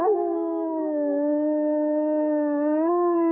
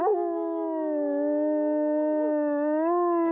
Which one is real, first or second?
second